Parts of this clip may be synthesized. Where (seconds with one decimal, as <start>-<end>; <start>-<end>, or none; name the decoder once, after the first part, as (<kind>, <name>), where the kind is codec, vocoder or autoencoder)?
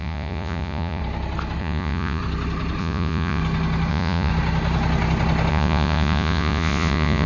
0.0-1.0 (vocoder, Vocos); 1.6-2.2; 2.8-3.4; 3.9-4.3; 5.5-7.3